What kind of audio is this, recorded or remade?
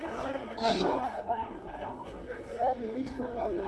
remade